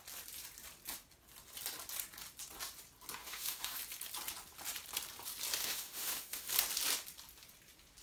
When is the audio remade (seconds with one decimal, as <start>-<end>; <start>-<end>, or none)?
3.2-3.8; 5.6-6.5